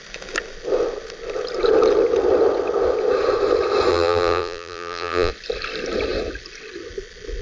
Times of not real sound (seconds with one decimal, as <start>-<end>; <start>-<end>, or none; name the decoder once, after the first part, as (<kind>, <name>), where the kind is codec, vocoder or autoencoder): 3.9-5.3 (vocoder, BigVGAN v2)